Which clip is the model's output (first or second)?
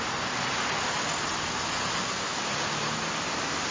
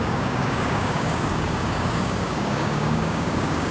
second